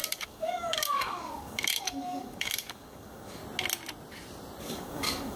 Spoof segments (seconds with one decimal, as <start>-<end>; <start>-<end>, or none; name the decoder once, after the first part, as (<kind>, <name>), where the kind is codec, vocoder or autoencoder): 0.0-3.4 (codec, DAC); 4.6-5.4

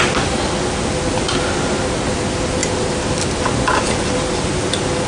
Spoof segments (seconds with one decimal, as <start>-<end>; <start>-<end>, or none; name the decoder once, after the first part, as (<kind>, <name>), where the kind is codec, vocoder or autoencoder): none

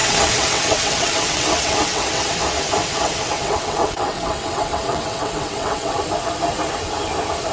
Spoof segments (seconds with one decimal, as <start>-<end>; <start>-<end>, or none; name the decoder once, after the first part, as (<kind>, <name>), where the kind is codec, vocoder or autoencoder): 0.0-2.3 (vocoder, WaveNeXt); 2.8-6.0

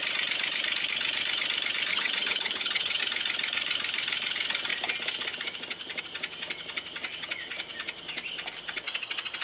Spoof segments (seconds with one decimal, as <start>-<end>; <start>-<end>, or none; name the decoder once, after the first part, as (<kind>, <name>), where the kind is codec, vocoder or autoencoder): 1.9-3.0 (vocoder, HiFi-GAN)

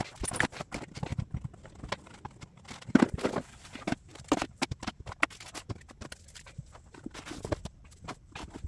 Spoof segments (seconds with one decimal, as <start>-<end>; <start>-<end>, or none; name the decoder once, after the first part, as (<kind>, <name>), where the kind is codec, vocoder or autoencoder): none

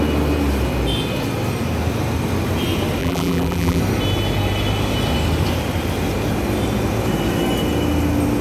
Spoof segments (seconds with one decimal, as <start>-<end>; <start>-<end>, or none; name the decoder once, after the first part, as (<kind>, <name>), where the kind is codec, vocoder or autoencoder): 3.0-3.8 (vocoder, BigVGAN v2)

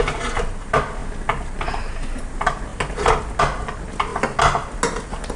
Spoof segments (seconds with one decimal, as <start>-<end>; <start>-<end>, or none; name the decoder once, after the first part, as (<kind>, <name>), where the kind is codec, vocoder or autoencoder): none